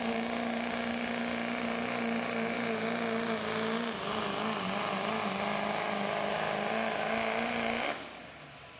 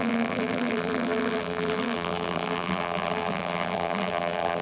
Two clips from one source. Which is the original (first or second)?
first